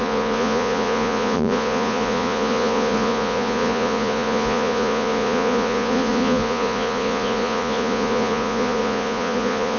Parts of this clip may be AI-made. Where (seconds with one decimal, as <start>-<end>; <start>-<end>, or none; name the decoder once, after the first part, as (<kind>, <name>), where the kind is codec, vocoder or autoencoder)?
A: 0.0-9.8 (vocoder, Vocos)